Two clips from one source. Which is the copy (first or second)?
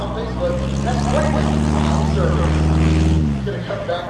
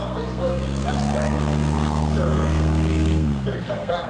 second